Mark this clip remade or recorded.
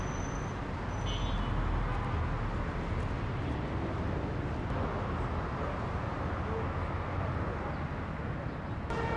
recorded